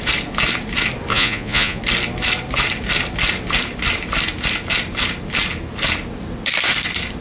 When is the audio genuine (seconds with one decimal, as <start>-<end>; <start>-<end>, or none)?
0.0-1.1; 1.8-7.2